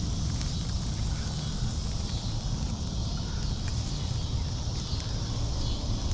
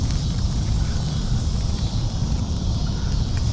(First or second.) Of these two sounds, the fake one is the second